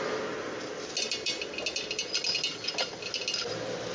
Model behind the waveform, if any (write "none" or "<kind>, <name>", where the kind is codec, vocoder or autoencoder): none